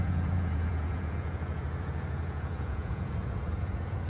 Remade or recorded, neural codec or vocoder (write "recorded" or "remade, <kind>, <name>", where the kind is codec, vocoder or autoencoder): remade, vocoder, Vocos